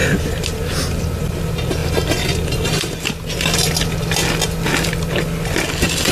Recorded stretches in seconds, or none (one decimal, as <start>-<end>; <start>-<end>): 0.0-6.1